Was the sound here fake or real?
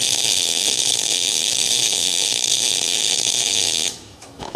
fake